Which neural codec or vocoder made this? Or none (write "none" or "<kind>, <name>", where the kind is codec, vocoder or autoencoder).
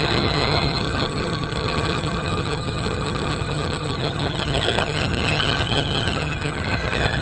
vocoder, HiFi-GAN